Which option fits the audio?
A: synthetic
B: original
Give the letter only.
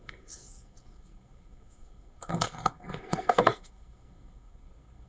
A